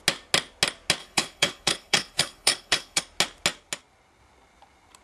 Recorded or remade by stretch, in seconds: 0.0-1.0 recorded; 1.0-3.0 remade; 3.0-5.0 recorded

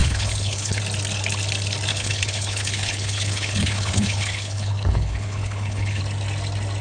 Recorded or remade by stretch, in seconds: 0.0-0.8 remade; 0.8-1.9 recorded; 1.9-6.0 remade; 6.0-6.8 recorded

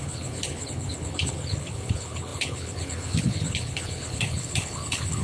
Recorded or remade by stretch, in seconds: 0.0-5.2 remade

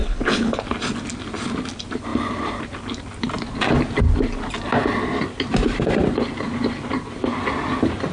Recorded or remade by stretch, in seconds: 0.0-0.6 remade; 0.6-8.1 recorded

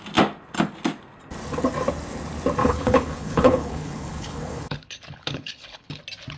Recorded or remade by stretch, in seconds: 0.0-2.6 recorded; 2.6-6.0 remade; 6.0-6.4 recorded

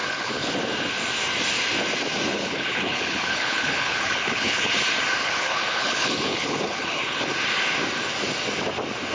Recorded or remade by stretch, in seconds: 0.0-0.5 remade; 0.5-2.3 recorded; 2.3-4.6 remade; 4.6-5.2 recorded; 5.2-7.2 remade; 7.2-9.1 recorded

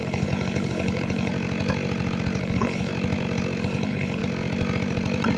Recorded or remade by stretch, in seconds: 0.0-1.3 remade; 1.3-2.4 recorded; 2.4-2.9 remade; 2.9-3.6 recorded; 3.6-4.2 remade; 4.2-5.4 recorded

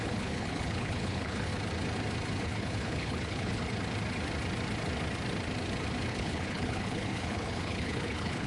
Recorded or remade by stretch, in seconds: 0.0-1.5 remade; 1.5-2.4 recorded; 2.4-3.6 remade; 3.6-6.1 recorded; 6.1-8.5 remade